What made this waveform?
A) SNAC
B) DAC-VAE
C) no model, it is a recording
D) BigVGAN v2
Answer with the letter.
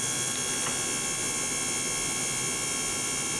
C